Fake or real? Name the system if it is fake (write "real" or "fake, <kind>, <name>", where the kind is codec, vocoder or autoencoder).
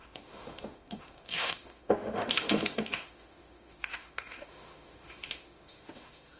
fake, autoencoder, DAC-VAE